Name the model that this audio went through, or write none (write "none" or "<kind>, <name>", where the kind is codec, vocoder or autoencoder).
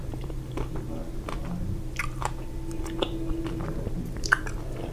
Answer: vocoder, BigVGAN v2